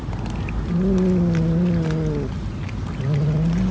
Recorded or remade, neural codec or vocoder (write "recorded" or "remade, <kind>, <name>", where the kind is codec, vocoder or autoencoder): recorded